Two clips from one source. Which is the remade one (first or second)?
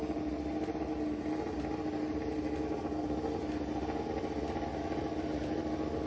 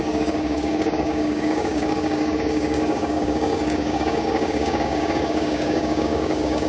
second